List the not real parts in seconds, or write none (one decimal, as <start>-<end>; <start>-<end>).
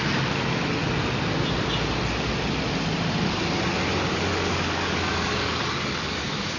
3.9-6.6